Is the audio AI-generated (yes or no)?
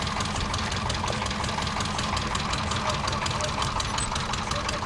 no